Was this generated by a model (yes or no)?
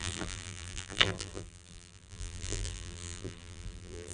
yes